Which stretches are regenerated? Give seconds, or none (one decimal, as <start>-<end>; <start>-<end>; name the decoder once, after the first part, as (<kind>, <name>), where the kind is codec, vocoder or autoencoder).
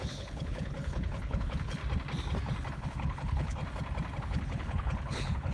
0.0-1.8 (codec, HILCodec); 2.7-3.6; 4.2-5.5